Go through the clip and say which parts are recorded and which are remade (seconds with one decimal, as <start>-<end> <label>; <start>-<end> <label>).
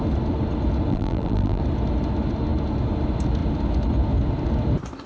0.0-0.9 recorded; 0.9-1.6 remade; 1.6-5.1 recorded